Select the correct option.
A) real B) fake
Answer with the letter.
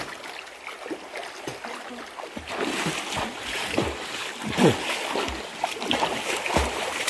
A